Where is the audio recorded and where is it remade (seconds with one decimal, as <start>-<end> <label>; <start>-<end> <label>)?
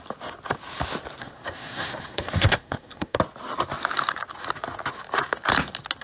0.0-1.2 recorded; 1.2-3.2 remade; 3.2-6.0 recorded